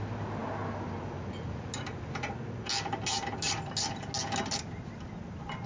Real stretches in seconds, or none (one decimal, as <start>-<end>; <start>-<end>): 0.0-5.7